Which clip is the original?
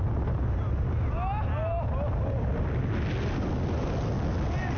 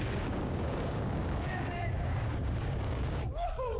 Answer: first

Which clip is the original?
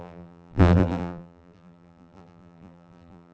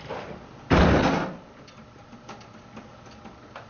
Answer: second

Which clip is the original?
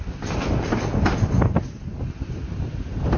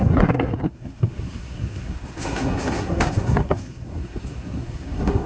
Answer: first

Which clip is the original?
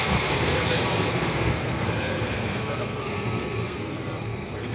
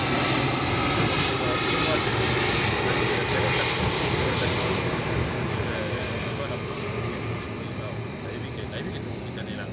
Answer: second